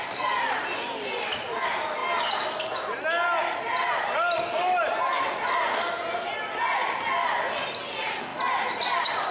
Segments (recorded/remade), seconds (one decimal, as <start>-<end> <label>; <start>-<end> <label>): 0.0-9.3 recorded